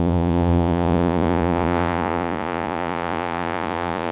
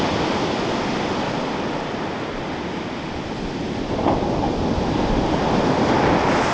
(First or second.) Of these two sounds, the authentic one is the second